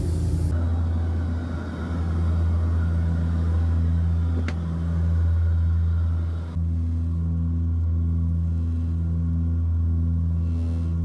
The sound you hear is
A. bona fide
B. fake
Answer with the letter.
A